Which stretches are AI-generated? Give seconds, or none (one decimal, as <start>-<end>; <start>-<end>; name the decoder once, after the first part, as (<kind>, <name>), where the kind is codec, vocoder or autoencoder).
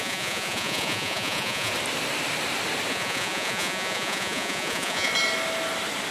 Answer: 0.0-1.7 (vocoder, Vocos); 2.9-5.1